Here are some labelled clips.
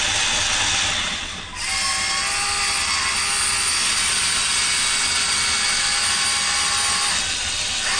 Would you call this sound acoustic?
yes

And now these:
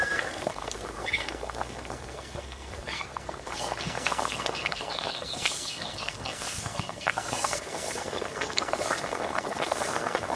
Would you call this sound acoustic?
no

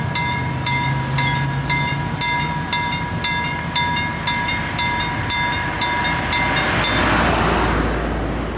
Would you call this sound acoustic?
yes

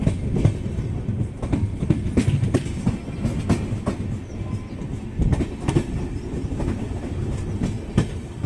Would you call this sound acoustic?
yes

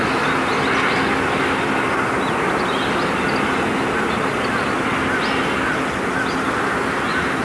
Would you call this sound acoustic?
yes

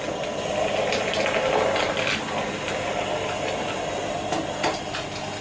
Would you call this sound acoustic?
yes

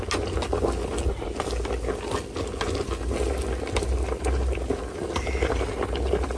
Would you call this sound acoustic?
yes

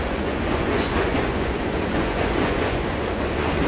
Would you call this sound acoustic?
no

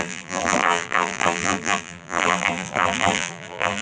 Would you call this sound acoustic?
no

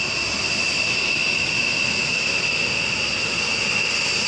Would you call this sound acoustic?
yes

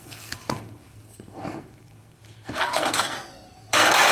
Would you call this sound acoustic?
no